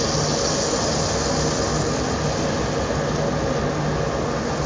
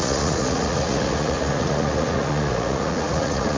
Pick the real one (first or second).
first